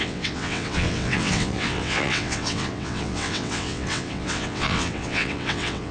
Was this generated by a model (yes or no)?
yes